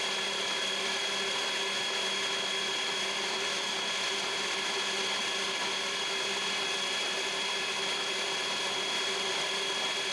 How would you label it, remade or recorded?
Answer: recorded